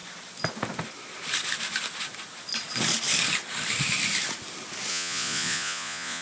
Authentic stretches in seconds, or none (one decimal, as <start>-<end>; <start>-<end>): 0.0-4.9